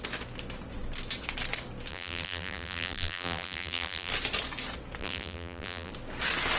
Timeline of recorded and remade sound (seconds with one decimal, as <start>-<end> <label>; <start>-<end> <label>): 0.0-1.9 recorded; 1.9-4.1 remade; 4.1-5.0 recorded; 5.0-5.9 remade; 5.9-6.6 recorded